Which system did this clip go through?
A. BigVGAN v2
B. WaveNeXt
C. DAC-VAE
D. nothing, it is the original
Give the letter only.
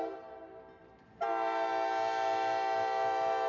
D